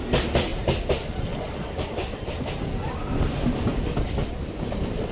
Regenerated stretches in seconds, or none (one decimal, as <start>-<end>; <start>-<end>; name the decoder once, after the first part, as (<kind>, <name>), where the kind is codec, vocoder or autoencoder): 0.5-2.4 (vocoder, BigVGAN v2); 3.7-5.1